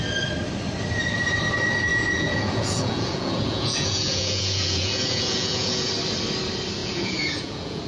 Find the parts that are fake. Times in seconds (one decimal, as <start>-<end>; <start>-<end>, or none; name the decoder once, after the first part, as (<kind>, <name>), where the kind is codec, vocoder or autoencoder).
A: 1.9-5.9 (vocoder, Vocos); 6.8-7.9